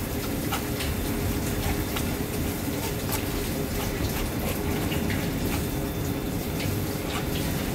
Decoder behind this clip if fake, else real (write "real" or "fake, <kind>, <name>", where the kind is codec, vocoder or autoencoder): fake, vocoder, BigVGAN v2